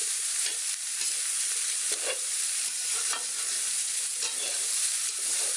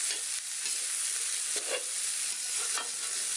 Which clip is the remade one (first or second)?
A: first